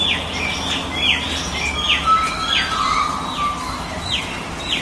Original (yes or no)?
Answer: yes